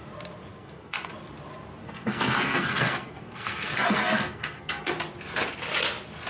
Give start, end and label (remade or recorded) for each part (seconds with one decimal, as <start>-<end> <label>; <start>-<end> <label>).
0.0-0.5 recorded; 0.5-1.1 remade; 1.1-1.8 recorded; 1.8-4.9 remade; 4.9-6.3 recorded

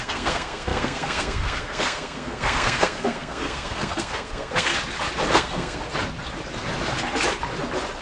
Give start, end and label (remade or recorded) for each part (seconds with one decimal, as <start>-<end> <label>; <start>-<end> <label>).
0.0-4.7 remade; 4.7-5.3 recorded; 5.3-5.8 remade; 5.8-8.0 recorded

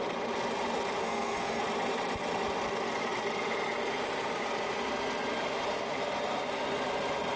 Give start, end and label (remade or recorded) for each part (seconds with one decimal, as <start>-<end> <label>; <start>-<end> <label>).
0.0-1.0 recorded; 1.0-1.6 remade; 1.6-7.4 recorded

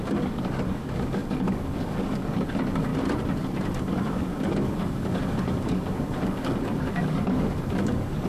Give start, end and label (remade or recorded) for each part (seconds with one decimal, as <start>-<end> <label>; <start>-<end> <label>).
0.0-2.9 remade; 2.9-3.8 recorded; 3.8-8.3 remade

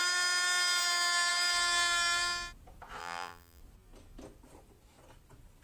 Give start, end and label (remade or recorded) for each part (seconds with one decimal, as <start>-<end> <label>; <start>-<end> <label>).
0.0-3.0 recorded; 3.0-3.6 remade; 3.6-5.6 recorded